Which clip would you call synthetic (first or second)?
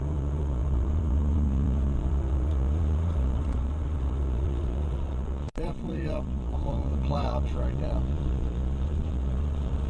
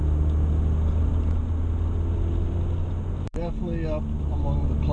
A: first